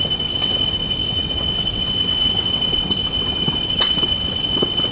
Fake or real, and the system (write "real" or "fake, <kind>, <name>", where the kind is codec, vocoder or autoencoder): fake, vocoder, WaveNeXt